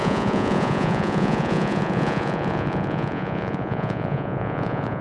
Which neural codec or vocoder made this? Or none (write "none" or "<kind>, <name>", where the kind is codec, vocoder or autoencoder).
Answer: vocoder, Vocos